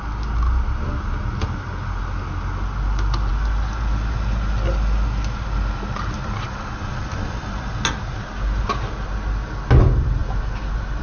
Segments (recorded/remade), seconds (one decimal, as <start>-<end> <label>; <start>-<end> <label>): 0.0-11.0 recorded